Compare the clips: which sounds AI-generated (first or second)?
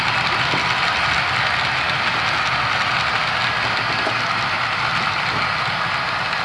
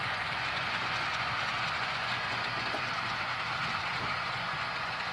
second